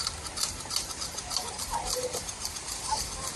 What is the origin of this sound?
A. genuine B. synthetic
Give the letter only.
A